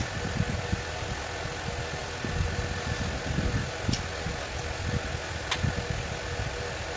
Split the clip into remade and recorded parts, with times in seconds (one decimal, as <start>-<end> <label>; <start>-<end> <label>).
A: 0.0-7.0 recorded